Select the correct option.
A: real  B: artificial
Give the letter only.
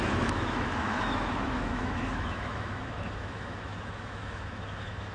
B